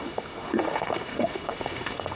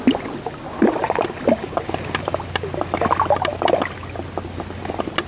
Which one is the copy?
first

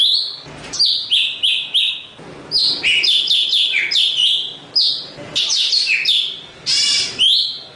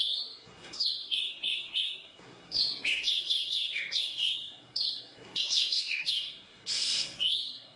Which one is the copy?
second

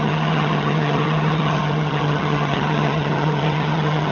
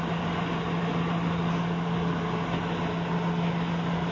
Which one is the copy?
first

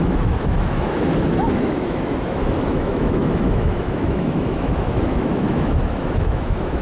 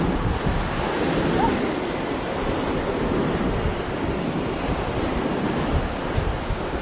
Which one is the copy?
first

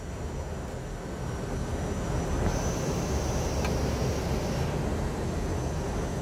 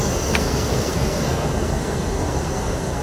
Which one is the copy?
second